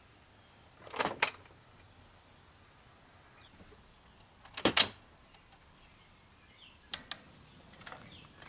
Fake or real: real